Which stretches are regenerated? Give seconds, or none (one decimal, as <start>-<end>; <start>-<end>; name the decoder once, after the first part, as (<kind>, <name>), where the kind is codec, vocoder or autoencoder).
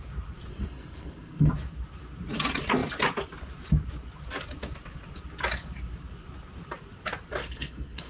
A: 0.5-1.5 (codec, SNAC); 7.4-8.1